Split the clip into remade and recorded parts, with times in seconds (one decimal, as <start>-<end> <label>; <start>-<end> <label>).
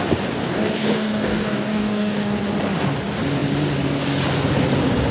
0.0-0.4 recorded; 0.4-2.3 remade; 2.3-5.1 recorded